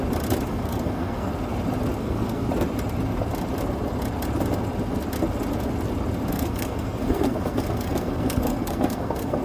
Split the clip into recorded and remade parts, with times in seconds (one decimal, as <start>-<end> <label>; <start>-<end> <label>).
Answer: 0.0-0.5 recorded; 0.5-1.3 remade; 1.3-2.0 recorded; 2.0-2.5 remade; 2.5-6.3 recorded; 6.3-9.4 remade